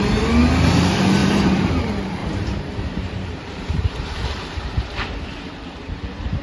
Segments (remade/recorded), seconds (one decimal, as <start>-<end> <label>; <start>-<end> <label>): 0.0-1.2 recorded; 1.2-1.7 remade; 1.7-2.2 recorded; 2.2-6.0 remade; 6.0-6.4 recorded